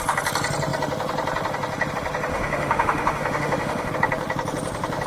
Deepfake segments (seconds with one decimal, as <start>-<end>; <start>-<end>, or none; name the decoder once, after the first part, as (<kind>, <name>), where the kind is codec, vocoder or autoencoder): 2.3-3.9 (autoencoder, DAC-VAE)